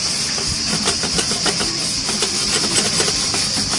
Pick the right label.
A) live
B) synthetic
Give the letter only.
A